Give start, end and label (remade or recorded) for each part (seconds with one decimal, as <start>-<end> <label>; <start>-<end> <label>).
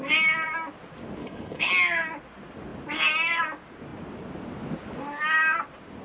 0.0-1.2 recorded; 1.2-1.7 remade; 1.7-6.0 recorded